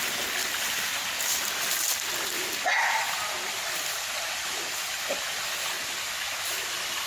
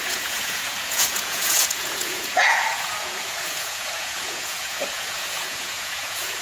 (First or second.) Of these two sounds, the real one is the first